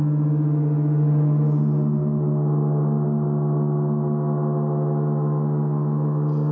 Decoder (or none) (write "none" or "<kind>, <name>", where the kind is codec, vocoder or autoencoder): none